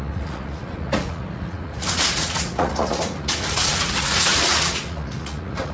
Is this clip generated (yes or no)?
yes